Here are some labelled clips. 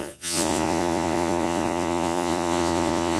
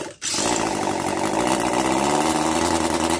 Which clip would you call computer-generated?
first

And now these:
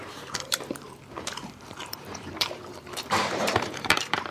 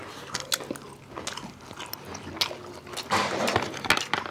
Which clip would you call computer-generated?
first